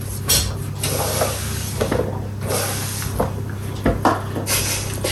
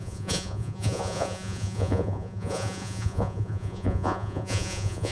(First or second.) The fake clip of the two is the second